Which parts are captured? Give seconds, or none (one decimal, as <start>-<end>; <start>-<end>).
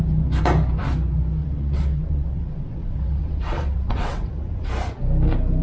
0.0-1.4; 4.7-5.6